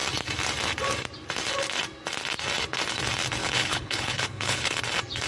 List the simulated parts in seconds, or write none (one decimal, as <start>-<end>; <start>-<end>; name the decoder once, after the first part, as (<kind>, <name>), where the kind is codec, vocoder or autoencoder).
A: 3.4-4.8 (codec, HILCodec)